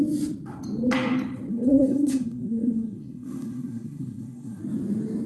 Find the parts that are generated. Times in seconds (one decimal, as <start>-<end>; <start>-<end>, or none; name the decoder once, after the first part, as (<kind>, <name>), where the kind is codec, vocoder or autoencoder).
1.5-4.6 (codec, SNAC)